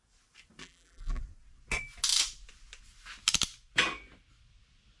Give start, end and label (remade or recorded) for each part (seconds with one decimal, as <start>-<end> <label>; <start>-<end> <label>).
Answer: 0.0-0.6 recorded; 0.6-1.2 remade; 1.2-5.0 recorded